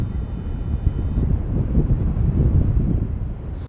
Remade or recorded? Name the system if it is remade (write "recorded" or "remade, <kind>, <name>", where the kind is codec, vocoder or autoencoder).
recorded